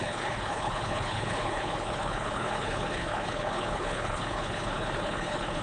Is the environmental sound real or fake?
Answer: fake